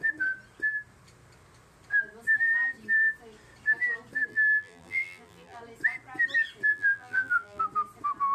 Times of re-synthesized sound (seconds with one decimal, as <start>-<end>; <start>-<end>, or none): 4.3-5.6; 6.7-7.6